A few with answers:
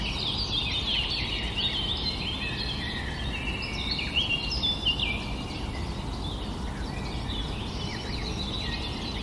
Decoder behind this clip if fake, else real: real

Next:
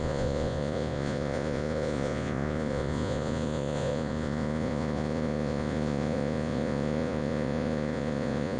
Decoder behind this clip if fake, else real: fake, vocoder, Vocos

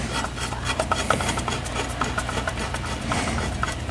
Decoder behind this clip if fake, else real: real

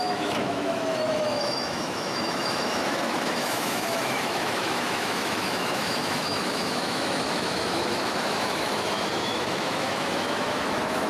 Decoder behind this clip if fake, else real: fake, autoencoder, DAC-VAE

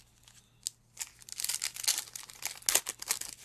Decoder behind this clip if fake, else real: real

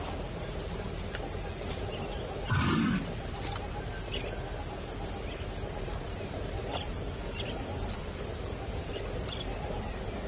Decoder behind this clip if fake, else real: real